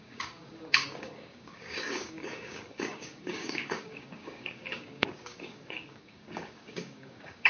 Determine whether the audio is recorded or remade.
remade